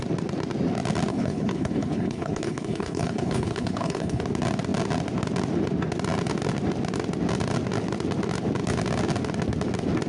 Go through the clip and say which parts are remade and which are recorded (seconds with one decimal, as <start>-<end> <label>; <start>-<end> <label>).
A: 0.0-1.1 recorded; 1.1-4.2 remade; 4.2-10.1 recorded